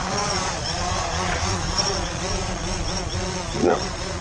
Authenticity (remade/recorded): remade